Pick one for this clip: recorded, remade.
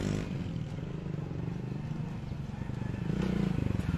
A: recorded